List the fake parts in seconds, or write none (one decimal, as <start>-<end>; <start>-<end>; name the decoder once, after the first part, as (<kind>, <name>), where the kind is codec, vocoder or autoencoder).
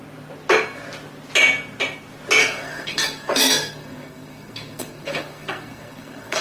2.4-6.4 (codec, SNAC)